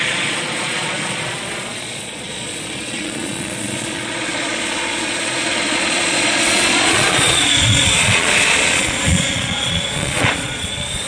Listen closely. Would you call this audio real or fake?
fake